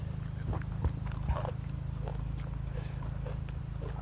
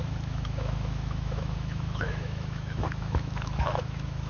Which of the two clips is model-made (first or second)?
second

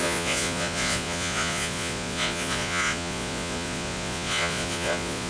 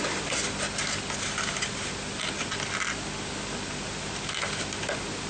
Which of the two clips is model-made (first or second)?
first